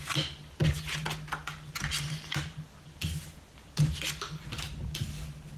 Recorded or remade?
recorded